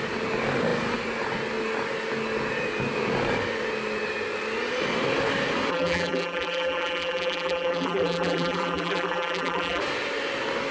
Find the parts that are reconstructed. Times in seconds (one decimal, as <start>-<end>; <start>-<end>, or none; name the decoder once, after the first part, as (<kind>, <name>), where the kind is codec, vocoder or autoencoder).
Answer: 5.7-9.8 (vocoder, BigVGAN v2)